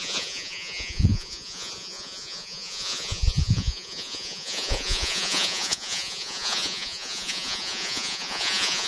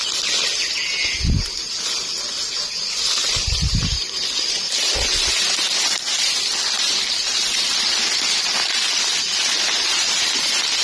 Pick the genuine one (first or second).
second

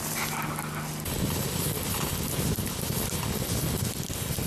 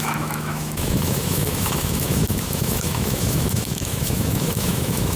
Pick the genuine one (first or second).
first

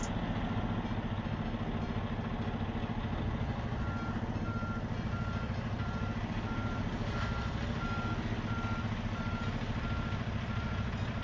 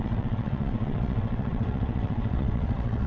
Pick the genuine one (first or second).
first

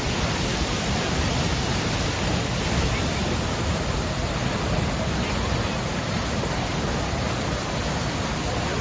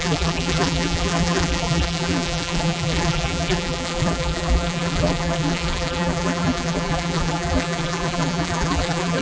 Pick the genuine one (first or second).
first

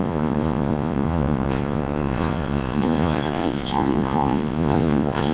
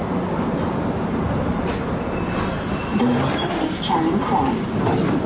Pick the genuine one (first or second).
second